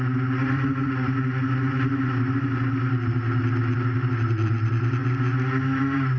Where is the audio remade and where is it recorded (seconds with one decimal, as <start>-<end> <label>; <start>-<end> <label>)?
0.0-6.2 recorded